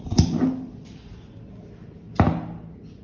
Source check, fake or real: real